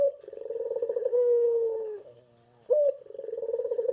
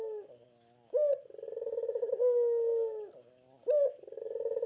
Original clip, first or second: second